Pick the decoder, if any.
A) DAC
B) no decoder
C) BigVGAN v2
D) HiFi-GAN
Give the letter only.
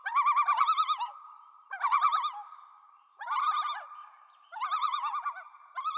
C